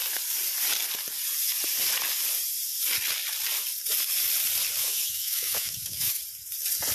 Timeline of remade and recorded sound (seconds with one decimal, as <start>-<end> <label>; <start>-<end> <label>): 0.0-4.8 recorded; 4.8-6.2 remade; 6.2-6.9 recorded